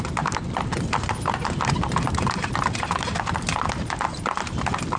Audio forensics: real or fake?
real